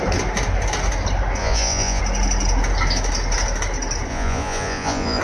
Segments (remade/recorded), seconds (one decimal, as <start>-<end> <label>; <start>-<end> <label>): 0.0-1.4 recorded; 1.4-2.0 remade; 2.0-4.1 recorded; 4.1-5.2 remade